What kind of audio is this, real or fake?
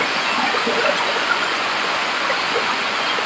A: fake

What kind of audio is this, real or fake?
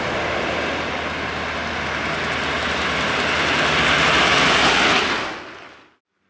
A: real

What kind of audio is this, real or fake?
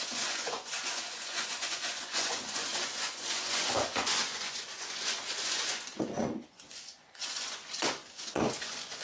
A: fake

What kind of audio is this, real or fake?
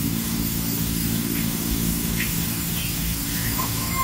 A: fake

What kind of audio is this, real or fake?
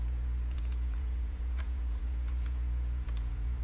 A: fake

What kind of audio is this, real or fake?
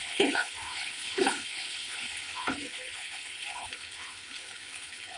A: fake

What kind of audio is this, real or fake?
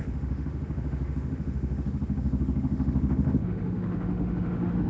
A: fake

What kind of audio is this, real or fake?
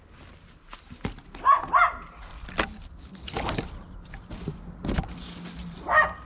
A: real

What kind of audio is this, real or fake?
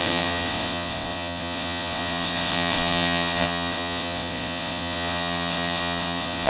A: fake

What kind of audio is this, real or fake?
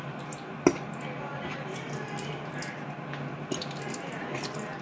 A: real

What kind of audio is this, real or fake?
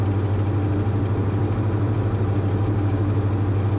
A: real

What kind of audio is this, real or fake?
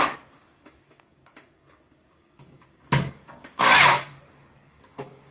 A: fake